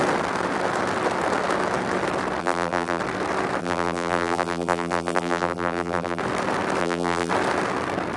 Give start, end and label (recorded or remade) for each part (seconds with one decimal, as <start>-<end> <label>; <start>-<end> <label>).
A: 0.0-2.4 recorded; 2.4-3.0 remade; 3.0-3.6 recorded; 3.6-6.2 remade; 6.2-6.8 recorded; 6.8-7.3 remade; 7.3-8.2 recorded